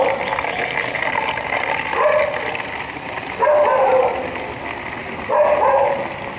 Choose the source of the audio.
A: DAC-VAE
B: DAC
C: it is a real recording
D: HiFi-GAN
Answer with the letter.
C